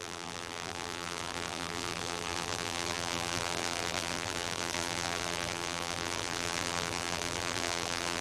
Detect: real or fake fake